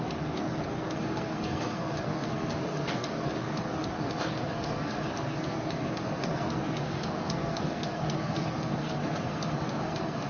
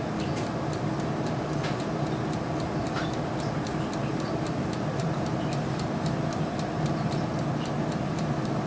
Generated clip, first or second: first